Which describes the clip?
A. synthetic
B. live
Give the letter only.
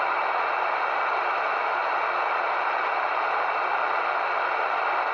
B